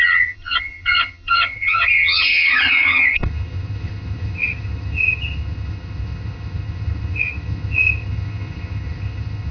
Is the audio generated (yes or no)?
yes